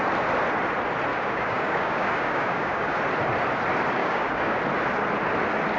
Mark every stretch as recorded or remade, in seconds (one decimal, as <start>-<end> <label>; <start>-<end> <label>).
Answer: 0.0-1.1 recorded; 1.1-3.0 remade; 3.0-4.0 recorded; 4.0-4.6 remade; 4.6-5.8 recorded

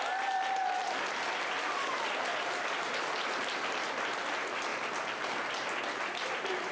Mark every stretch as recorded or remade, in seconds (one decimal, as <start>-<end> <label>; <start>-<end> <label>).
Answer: 0.0-6.7 recorded